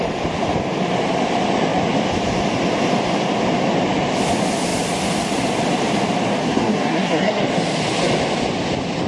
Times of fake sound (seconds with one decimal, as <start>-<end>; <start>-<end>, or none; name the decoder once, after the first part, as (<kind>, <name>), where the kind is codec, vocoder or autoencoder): 6.4-7.4 (codec, SNAC)